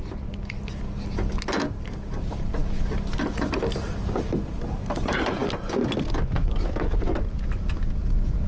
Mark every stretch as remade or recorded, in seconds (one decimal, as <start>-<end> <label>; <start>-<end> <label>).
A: 0.0-8.5 recorded